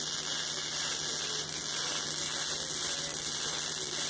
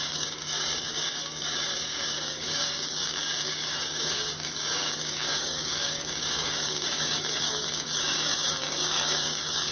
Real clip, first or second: first